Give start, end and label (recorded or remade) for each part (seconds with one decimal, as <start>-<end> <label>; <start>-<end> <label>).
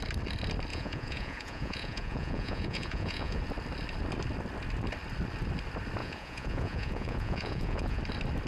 0.0-0.7 recorded; 0.7-3.4 remade; 3.4-6.0 recorded; 6.0-8.0 remade; 8.0-8.5 recorded